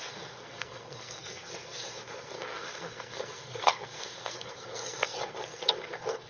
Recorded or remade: remade